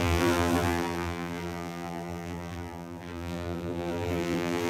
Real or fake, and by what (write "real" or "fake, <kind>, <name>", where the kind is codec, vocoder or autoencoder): fake, vocoder, BigVGAN v2